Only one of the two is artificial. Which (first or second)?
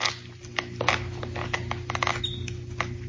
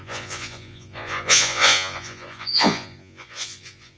second